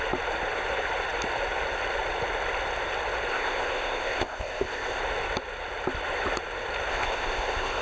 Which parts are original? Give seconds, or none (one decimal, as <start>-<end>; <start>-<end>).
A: 0.0-3.3; 5.0-6.9